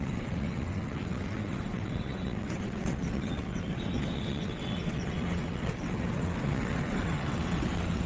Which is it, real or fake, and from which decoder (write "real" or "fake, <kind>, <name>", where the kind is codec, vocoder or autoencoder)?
fake, vocoder, WaveNeXt